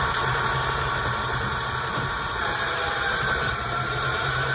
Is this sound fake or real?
fake